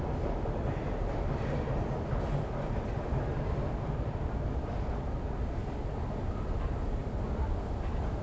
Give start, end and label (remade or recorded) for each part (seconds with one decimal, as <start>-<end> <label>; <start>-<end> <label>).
0.0-8.2 recorded